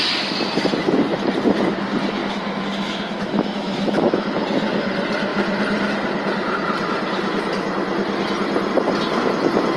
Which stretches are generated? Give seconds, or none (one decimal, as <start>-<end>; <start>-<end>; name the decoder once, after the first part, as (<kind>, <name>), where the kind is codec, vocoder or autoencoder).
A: 2.2-4.3 (autoencoder, DAC-VAE)

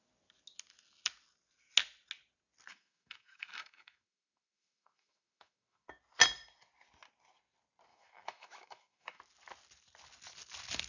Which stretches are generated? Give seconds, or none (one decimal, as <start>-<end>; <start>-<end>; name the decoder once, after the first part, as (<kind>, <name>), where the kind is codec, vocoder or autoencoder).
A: 2.7-6.0 (autoencoder, DAC-VAE); 7.9-9.2